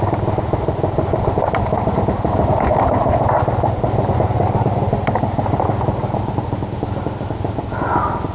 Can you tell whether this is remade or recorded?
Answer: recorded